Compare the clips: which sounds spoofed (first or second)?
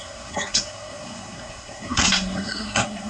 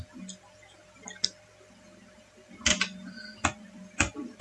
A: first